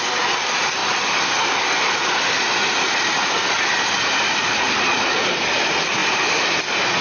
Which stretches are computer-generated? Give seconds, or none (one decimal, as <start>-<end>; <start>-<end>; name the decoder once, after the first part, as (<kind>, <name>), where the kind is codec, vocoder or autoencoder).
none